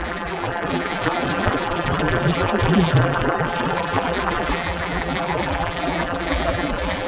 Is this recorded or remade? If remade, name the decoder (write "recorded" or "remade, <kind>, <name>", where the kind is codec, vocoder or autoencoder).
remade, vocoder, BigVGAN v2